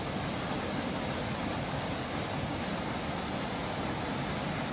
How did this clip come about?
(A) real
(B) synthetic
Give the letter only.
A